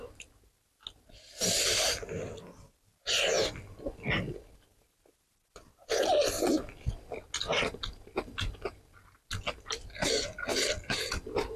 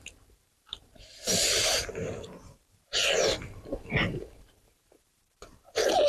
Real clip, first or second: first